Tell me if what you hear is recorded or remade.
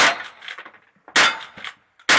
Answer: recorded